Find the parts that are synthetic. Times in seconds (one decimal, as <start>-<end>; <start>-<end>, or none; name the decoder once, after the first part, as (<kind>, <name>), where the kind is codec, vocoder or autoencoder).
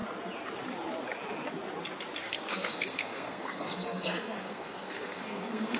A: 2.3-5.8 (codec, SNAC)